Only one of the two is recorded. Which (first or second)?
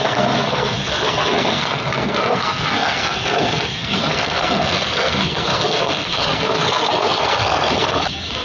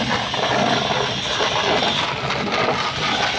second